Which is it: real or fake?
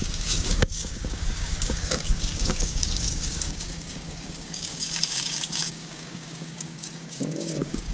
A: fake